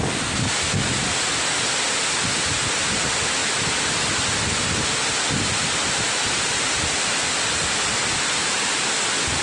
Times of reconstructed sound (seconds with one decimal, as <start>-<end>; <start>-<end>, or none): none